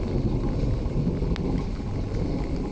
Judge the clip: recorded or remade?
recorded